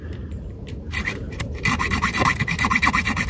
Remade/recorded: remade